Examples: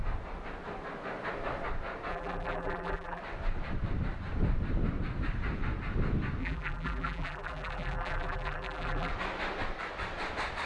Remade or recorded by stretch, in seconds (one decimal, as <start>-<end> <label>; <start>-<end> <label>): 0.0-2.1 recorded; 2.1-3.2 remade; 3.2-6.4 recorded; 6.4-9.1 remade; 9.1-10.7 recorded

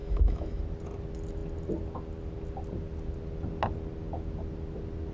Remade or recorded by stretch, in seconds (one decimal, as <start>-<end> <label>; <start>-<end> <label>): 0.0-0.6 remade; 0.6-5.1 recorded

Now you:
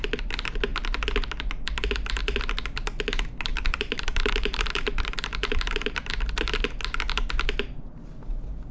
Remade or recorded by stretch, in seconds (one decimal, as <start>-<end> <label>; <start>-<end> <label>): 0.0-3.5 recorded; 3.5-6.1 remade; 6.1-8.7 recorded

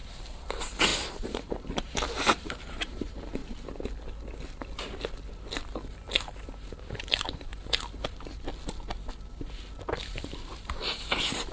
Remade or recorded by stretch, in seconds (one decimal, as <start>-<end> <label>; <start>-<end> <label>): 0.0-3.4 remade; 3.4-6.1 recorded; 6.1-7.5 remade; 7.5-10.4 recorded; 10.4-11.5 remade